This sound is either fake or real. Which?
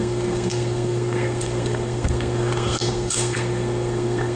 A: fake